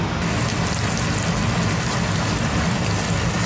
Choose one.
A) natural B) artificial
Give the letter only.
A